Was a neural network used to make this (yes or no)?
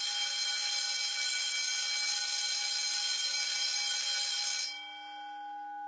no